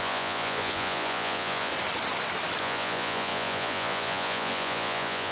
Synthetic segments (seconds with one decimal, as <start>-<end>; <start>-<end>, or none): 0.0-1.7; 2.6-5.3